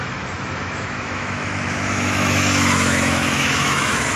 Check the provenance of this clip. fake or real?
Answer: fake